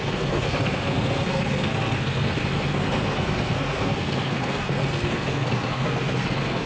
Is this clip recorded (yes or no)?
no